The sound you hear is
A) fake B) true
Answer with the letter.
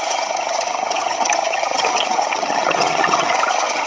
A